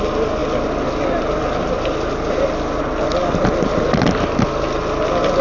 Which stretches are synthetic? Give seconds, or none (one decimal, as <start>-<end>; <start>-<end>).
none